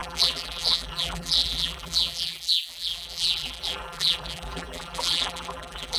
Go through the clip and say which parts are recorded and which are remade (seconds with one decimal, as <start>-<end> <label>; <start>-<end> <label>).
0.0-6.0 remade